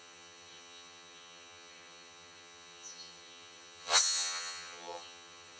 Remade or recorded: remade